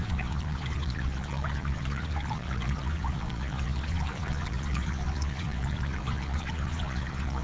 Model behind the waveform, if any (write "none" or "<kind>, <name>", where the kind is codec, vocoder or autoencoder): vocoder, Vocos